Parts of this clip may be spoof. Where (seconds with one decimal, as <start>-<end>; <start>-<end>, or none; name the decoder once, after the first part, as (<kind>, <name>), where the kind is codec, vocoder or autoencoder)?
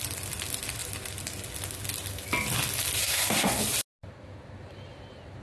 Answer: 3.0-3.6 (codec, SNAC)